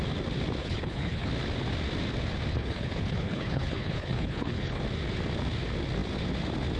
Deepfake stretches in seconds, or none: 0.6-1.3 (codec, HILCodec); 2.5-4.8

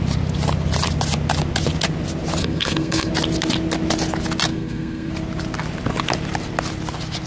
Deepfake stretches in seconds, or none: 2.4-3.1 (codec, SNAC); 4.5-5.1

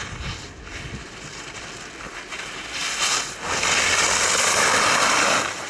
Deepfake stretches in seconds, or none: none